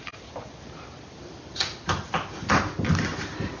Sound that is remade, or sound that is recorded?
recorded